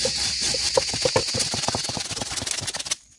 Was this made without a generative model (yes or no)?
yes